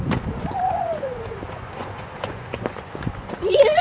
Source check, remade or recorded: remade